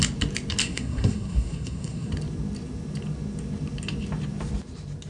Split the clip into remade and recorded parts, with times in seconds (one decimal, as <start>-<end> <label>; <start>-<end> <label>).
0.0-0.6 recorded; 0.6-2.1 remade; 2.1-5.1 recorded